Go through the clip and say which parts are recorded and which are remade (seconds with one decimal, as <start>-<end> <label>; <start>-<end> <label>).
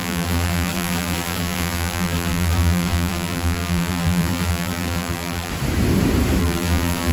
0.0-5.5 remade; 5.5-6.4 recorded; 6.4-7.1 remade